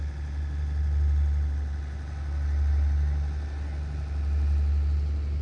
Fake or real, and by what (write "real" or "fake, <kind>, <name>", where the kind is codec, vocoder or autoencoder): real